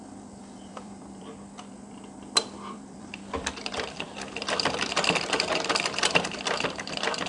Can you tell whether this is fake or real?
fake